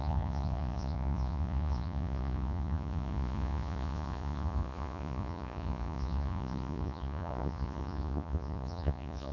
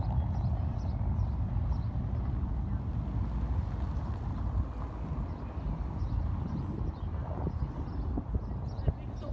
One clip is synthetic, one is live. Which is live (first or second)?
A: second